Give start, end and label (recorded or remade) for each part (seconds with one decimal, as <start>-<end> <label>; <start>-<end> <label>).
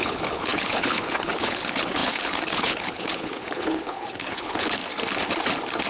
0.0-4.8 remade; 4.8-5.9 recorded